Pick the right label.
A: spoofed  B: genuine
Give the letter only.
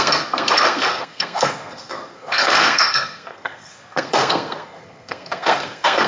A